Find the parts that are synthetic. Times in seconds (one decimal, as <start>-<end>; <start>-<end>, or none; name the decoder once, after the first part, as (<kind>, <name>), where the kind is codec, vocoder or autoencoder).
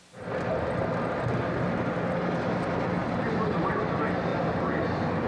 3.0-3.7 (vocoder, BigVGAN v2); 4.3-5.3